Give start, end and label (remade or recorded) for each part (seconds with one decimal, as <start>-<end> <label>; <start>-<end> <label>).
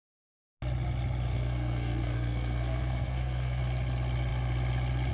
0.0-1.3 recorded; 1.3-3.6 remade; 3.6-5.1 recorded